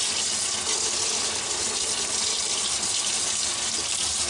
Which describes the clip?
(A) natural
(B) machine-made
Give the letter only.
A